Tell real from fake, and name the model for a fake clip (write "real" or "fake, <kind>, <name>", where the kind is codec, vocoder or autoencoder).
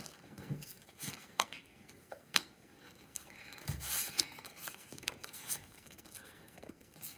fake, codec, SNAC